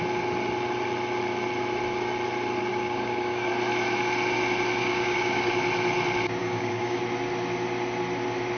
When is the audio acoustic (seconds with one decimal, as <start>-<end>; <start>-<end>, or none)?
0.0-2.7; 3.5-4.8; 5.5-6.4; 7.0-8.6